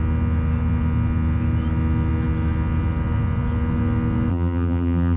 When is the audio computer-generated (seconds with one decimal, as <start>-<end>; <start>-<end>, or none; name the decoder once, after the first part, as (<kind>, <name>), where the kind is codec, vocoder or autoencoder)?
4.3-5.2 (vocoder, BigVGAN v2)